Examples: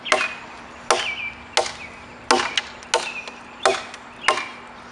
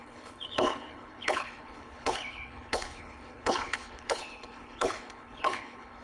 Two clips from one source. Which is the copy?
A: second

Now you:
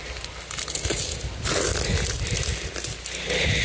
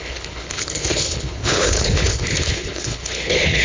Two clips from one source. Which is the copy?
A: second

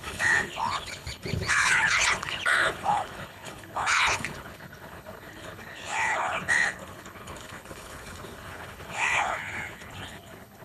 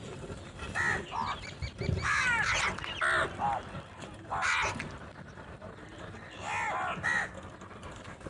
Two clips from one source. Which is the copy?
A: first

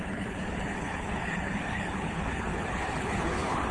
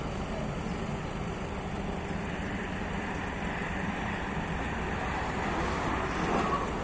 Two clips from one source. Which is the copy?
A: first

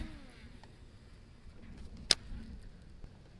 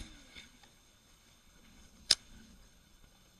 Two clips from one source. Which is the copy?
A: second